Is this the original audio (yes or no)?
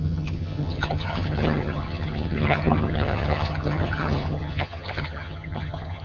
no